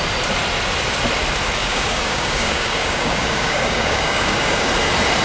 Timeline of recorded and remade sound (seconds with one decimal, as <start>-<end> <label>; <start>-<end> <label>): 0.0-1.6 recorded; 1.6-4.7 remade; 4.7-5.2 recorded